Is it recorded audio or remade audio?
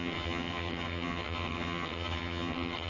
remade